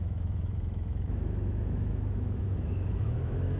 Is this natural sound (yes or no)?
no